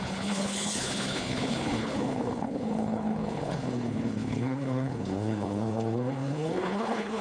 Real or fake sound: fake